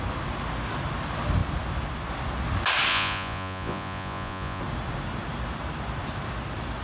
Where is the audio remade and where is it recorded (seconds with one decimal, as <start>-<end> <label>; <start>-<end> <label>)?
0.0-2.9 recorded; 2.9-4.6 remade; 4.6-6.8 recorded